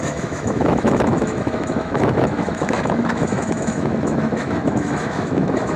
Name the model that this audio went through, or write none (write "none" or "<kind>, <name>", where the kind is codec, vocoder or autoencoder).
autoencoder, DAC-VAE